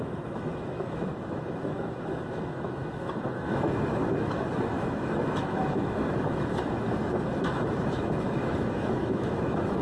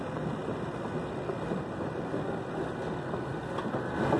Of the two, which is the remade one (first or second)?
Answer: first